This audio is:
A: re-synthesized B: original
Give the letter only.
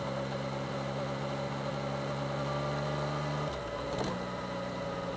B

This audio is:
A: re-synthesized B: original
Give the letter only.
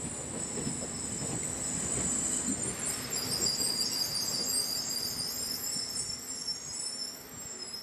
B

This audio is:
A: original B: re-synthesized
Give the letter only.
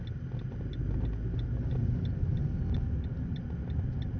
A